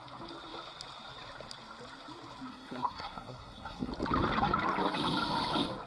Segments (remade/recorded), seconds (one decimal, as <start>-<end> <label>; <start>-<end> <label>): 0.0-2.5 recorded; 2.5-3.9 remade; 3.9-5.9 recorded